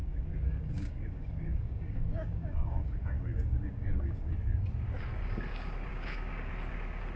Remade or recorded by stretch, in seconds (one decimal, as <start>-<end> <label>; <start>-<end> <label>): 0.0-4.3 remade; 4.3-5.9 recorded; 5.9-6.5 remade; 6.5-7.2 recorded